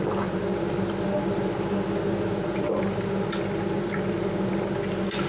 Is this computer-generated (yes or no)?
no